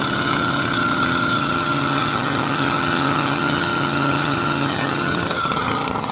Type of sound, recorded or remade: remade